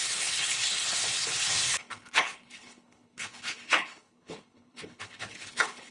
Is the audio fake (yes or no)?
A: yes